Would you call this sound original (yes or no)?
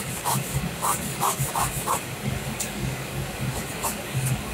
no